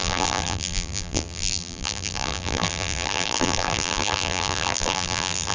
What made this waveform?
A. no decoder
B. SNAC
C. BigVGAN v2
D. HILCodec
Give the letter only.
C